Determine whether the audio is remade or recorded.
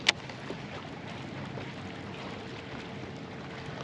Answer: recorded